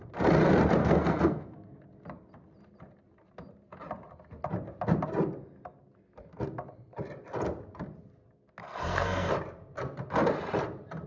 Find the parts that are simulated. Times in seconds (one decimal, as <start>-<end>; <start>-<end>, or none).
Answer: 0.8-1.8; 8.6-9.3